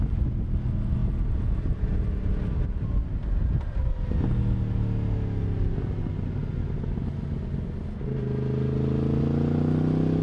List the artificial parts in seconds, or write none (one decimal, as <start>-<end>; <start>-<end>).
none